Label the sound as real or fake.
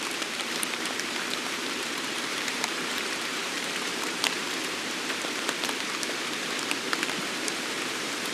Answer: fake